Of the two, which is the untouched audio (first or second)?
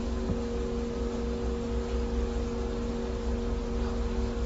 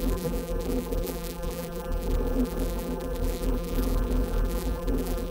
first